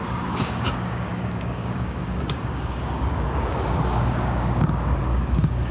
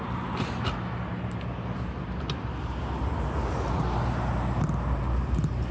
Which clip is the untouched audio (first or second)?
second